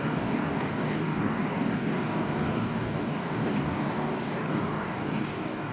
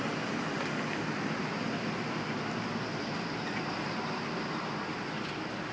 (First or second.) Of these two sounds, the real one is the second